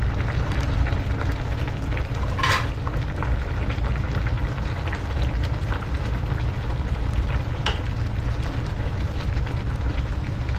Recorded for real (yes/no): yes